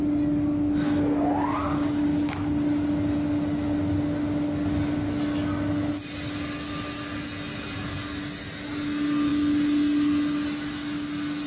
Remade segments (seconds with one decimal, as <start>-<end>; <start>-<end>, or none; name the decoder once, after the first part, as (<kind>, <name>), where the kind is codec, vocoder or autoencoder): none